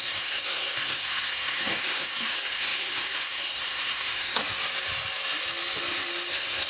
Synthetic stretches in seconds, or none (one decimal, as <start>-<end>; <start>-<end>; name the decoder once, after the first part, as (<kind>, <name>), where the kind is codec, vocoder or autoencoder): 0.0-4.4 (codec, SNAC); 6.3-6.7